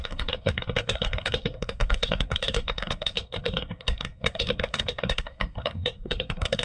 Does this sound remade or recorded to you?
remade